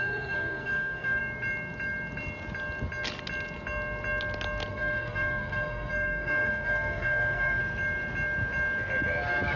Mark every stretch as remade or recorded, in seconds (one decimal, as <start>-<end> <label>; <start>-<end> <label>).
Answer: 0.0-1.2 remade; 1.2-4.7 recorded; 4.7-7.6 remade; 7.6-9.6 recorded